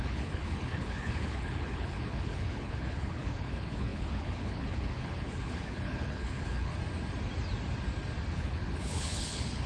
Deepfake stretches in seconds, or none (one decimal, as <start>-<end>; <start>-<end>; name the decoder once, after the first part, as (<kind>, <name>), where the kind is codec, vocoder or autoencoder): 0.0-6.7 (codec, HILCodec); 8.3-9.7

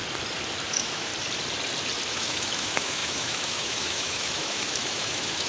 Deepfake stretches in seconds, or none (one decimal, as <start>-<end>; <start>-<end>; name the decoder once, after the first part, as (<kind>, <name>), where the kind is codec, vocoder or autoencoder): 0.7-1.1 (autoencoder, DAC-VAE); 2.1-5.5

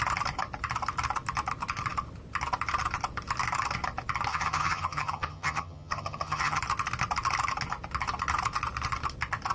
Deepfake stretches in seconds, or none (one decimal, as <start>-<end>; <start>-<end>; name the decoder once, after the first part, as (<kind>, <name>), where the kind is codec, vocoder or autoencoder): 4.3-6.6 (vocoder, HiFi-GAN)

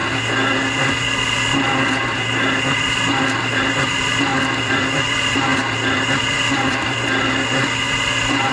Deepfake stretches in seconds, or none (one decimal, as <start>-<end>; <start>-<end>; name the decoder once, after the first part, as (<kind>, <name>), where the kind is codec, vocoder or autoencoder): 3.6-5.5 (vocoder, BigVGAN v2); 6.2-8.5

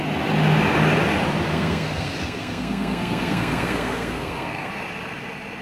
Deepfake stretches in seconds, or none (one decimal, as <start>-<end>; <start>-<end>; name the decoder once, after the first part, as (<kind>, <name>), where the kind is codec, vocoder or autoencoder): 1.5-4.7 (codec, SNAC)

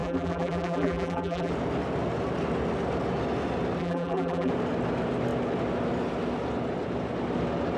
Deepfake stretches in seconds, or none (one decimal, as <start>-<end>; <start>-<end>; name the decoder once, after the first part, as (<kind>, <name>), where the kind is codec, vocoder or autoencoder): 0.0-1.5 (vocoder, BigVGAN v2); 3.8-4.5

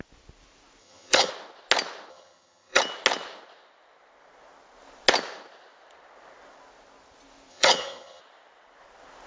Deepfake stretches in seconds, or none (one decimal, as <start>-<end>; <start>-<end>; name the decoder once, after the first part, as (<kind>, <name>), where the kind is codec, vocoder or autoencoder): 0.8-1.3 (vocoder, HiFi-GAN); 2.1-2.8; 7.5-8.2

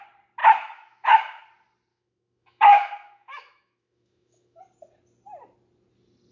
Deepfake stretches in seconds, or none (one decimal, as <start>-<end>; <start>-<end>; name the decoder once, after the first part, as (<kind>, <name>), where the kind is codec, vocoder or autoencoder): 0.4-1.4 (autoencoder, DAC-VAE); 1.9-4.6